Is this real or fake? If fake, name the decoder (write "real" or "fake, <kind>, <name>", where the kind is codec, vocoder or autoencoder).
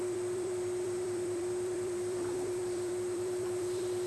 fake, vocoder, BigVGAN v2